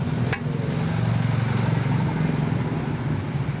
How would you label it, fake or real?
real